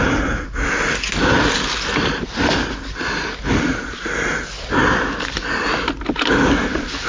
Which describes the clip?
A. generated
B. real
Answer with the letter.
B